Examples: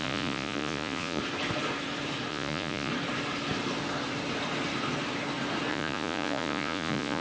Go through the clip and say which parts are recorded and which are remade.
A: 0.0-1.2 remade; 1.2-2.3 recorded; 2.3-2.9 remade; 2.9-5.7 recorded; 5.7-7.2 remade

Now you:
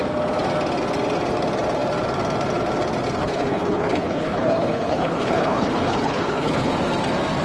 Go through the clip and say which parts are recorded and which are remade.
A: 0.0-3.2 recorded; 3.2-6.7 remade; 6.7-7.4 recorded

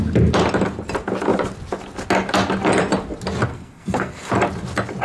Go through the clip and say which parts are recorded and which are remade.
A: 0.0-3.5 recorded; 3.5-4.3 remade; 4.3-5.0 recorded

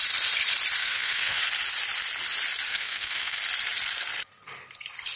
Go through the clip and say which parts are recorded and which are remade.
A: 0.0-0.8 recorded; 0.8-1.4 remade; 1.4-2.7 recorded; 2.7-3.4 remade; 3.4-5.2 recorded

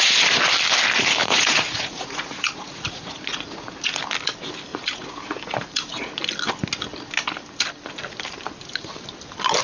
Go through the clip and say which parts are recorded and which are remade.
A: 0.0-1.2 recorded; 1.2-4.0 remade; 4.0-4.7 recorded; 4.7-6.2 remade; 6.2-9.6 recorded

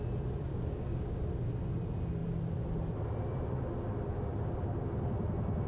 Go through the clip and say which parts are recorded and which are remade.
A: 0.0-0.5 recorded; 0.5-1.3 remade; 1.3-5.7 recorded

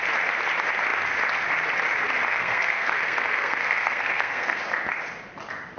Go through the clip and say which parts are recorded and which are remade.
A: 0.0-2.3 recorded; 2.3-4.6 remade; 4.6-5.8 recorded

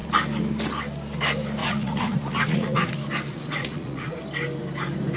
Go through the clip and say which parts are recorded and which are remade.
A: 0.0-1.6 recorded; 1.6-2.9 remade; 2.9-3.3 recorded; 3.3-4.2 remade; 4.2-5.2 recorded